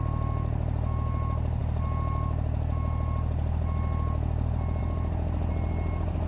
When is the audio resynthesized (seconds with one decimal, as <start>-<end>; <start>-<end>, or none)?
none